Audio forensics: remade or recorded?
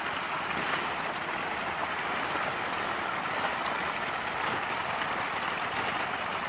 recorded